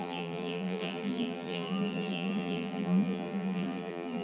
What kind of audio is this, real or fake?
fake